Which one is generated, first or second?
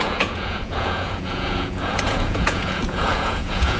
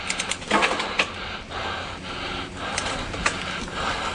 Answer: first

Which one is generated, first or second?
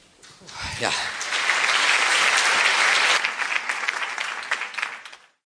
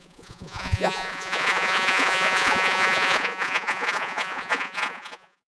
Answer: second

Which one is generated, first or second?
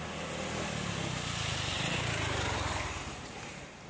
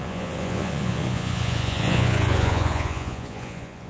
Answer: second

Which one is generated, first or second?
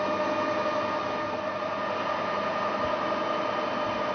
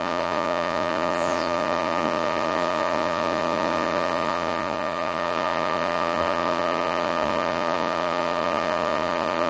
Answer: second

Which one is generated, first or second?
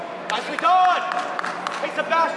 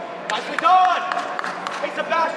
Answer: second